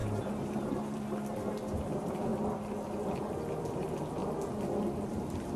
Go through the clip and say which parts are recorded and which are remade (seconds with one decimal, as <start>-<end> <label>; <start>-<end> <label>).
0.0-2.3 remade; 2.3-3.6 recorded; 3.6-4.2 remade; 4.2-5.1 recorded; 5.1-5.6 remade

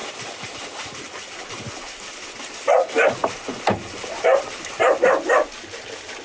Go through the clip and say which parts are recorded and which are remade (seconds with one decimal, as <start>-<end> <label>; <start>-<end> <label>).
0.0-2.0 remade; 2.0-3.2 recorded; 3.2-5.3 remade; 5.3-6.2 recorded

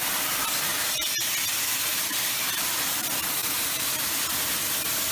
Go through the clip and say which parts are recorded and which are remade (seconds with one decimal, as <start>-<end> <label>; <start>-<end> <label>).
0.0-0.7 recorded; 0.7-1.3 remade; 1.3-1.9 recorded; 1.9-2.7 remade; 2.7-3.4 recorded; 3.4-4.1 remade; 4.1-5.1 recorded

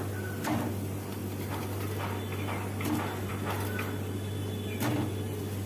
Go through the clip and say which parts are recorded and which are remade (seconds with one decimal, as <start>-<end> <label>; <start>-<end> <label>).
0.0-5.7 recorded

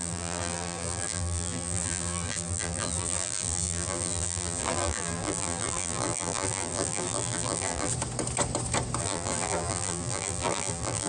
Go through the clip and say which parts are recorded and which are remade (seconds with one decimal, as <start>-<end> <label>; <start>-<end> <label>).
0.0-7.9 remade; 7.9-9.0 recorded; 9.0-11.1 remade